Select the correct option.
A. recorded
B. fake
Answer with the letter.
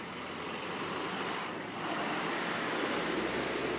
A